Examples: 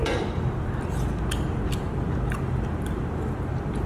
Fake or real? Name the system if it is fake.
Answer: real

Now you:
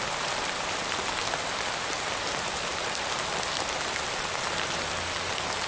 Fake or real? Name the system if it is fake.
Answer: real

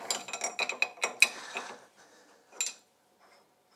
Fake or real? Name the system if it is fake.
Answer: real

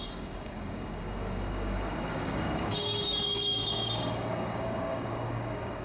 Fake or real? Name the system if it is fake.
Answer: fake, codec, DAC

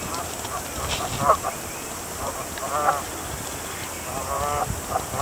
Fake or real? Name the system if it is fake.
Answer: real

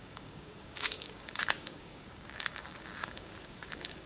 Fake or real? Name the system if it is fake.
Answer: fake, codec, DAC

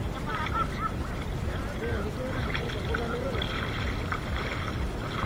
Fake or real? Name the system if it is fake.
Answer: real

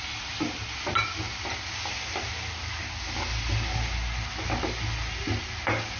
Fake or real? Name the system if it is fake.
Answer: real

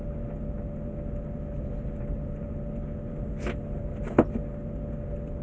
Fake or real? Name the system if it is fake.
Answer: real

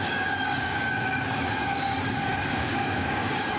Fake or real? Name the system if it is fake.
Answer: fake, codec, DAC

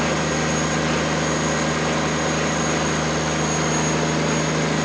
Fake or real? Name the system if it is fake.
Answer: real